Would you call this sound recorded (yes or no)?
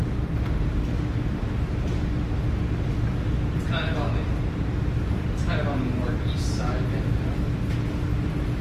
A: yes